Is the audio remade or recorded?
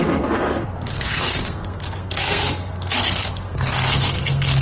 remade